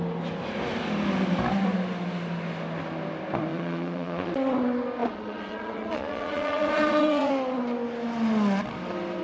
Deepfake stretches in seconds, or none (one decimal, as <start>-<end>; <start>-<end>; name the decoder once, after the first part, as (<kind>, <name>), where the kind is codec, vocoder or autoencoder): 3.5-4.3 (vocoder, Vocos); 5.0-7.3